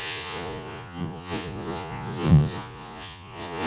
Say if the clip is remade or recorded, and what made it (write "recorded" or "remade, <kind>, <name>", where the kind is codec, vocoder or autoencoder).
remade, vocoder, Vocos